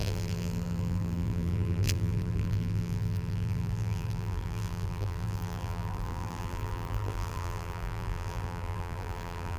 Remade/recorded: remade